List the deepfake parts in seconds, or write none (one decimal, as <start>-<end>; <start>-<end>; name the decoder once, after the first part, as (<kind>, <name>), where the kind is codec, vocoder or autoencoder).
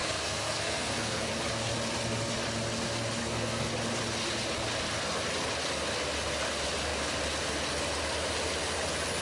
0.0-1.3 (codec, SNAC); 3.2-3.7